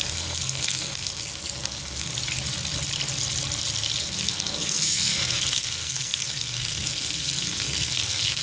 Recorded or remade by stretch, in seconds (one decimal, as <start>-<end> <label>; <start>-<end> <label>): 0.0-2.1 remade; 2.1-4.0 recorded; 4.0-8.4 remade